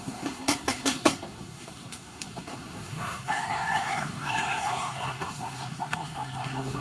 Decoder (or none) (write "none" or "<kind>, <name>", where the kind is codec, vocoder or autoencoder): codec, SNAC